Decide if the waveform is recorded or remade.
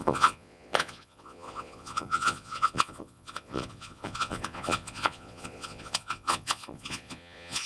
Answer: remade